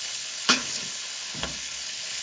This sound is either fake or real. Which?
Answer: fake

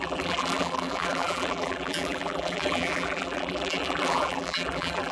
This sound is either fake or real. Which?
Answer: fake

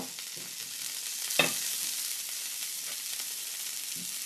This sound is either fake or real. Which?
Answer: real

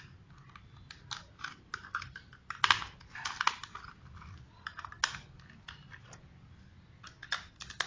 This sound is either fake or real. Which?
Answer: real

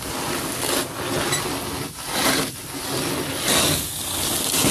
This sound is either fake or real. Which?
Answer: real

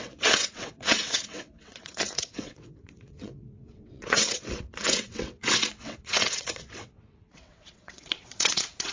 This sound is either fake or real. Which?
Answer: fake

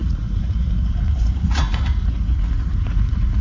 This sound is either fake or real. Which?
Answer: fake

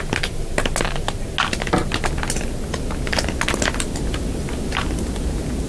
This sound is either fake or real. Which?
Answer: real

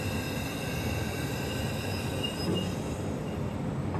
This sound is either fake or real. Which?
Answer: real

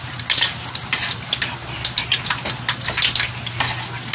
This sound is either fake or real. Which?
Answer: real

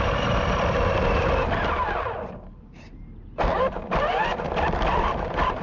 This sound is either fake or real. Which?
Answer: real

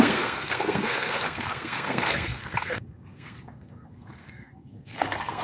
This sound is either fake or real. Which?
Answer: fake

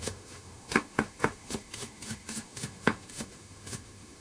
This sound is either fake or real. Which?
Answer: fake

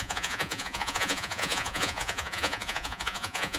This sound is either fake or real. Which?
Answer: fake